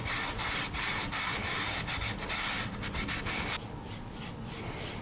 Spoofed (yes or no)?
no